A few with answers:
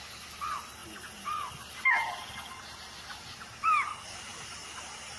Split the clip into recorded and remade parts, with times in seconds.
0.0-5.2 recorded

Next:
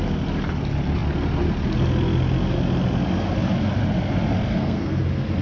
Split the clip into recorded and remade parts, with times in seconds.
0.0-4.5 recorded; 4.5-5.0 remade; 5.0-5.4 recorded